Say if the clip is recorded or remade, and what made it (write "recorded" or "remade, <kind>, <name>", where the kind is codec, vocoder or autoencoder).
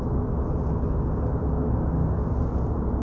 recorded